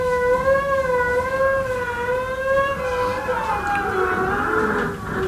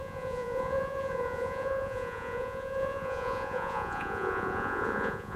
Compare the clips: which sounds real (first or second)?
first